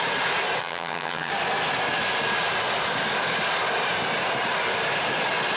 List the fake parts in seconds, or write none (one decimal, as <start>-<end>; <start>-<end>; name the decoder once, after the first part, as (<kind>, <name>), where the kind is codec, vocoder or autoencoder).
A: 0.6-1.3 (vocoder, HiFi-GAN)